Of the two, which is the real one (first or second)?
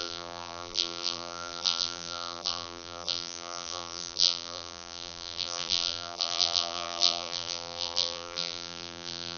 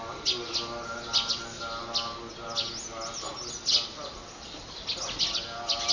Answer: second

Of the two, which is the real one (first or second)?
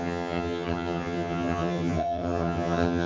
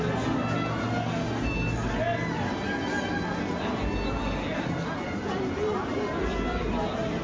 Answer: second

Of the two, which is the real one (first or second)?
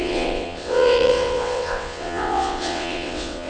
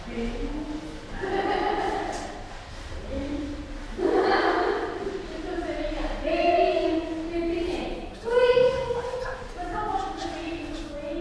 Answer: second